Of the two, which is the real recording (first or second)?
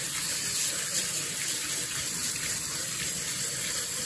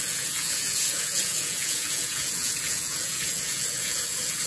first